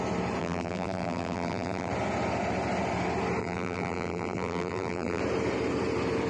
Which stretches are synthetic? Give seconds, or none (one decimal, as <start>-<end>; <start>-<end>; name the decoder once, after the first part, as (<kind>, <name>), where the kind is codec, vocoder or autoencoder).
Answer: 0.4-1.9 (vocoder, BigVGAN v2); 3.4-5.2